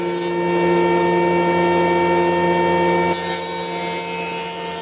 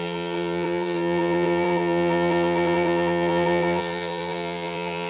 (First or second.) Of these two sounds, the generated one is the second